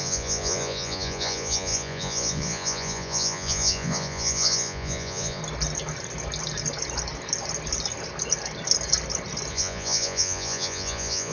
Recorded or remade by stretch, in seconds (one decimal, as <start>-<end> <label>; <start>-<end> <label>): 0.0-5.4 remade; 5.4-9.5 recorded; 9.5-11.3 remade